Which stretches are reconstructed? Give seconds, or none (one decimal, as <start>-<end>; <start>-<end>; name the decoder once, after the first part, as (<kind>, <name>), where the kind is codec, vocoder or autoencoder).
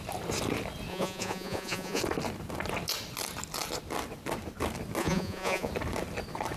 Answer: 0.9-2.0 (vocoder, Vocos); 5.0-5.7